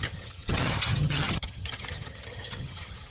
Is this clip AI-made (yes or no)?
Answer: yes